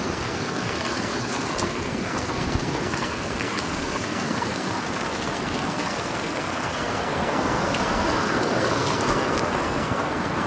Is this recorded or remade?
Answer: remade